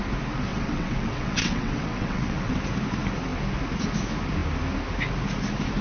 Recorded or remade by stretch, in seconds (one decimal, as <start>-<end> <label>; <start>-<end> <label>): 0.0-0.5 recorded; 0.5-2.5 remade; 2.5-5.8 recorded